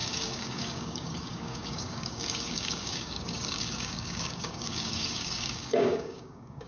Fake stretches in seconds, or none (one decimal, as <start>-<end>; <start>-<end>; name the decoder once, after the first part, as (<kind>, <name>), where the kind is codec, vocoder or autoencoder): 0.0-6.7 (codec, DAC)